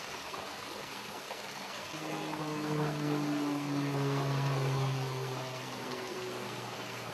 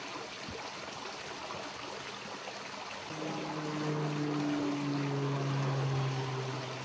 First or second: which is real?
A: second